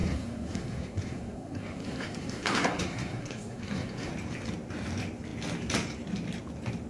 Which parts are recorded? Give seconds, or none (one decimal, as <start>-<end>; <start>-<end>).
4.1-6.9